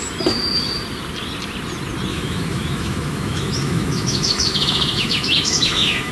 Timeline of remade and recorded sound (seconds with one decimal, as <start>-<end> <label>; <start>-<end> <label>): 0.0-2.1 recorded; 2.1-6.1 remade